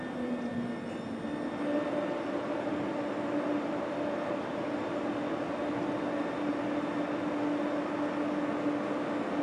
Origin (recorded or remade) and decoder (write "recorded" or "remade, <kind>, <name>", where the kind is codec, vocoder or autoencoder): recorded